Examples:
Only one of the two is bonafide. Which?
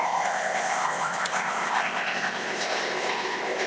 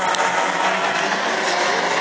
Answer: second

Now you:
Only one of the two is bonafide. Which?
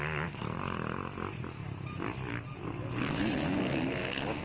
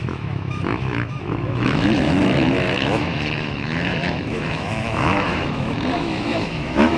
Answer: first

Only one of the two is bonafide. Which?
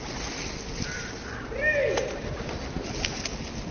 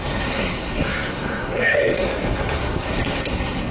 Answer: first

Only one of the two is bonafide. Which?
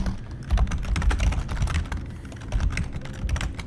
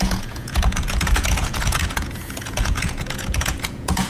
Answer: first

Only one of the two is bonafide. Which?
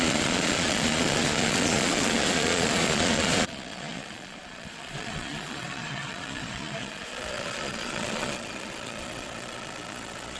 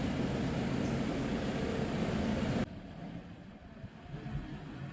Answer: second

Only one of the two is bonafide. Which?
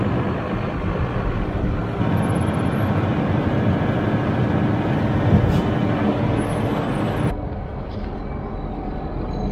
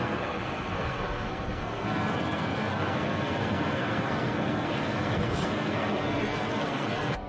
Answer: first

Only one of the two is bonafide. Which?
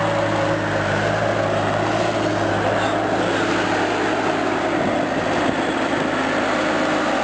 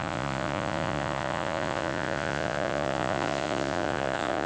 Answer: first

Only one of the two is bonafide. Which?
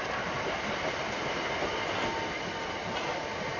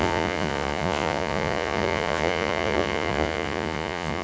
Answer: first